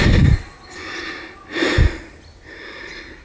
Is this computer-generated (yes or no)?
no